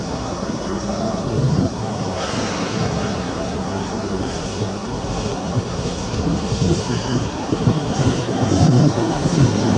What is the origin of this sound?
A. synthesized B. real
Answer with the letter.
A